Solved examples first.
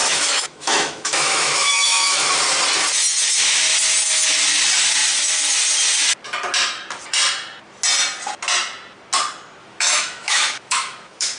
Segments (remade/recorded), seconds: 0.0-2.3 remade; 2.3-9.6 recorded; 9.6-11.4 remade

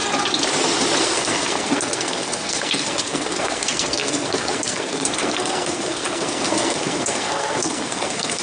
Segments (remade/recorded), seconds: 0.0-1.0 recorded; 1.0-8.4 remade

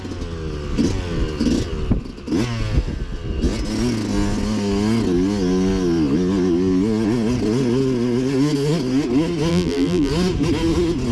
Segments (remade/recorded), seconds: 0.0-9.5 recorded; 9.5-10.1 remade; 10.1-11.1 recorded

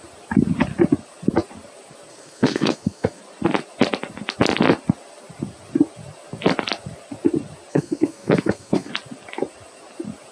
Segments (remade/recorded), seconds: 0.0-2.1 recorded; 2.1-3.2 remade; 3.2-7.7 recorded; 7.7-8.9 remade; 8.9-10.3 recorded

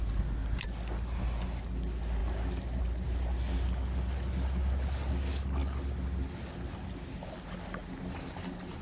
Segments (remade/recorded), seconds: 0.0-7.8 recorded; 7.8-8.8 remade

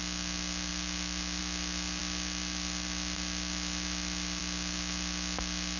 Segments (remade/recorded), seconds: 0.0-5.8 recorded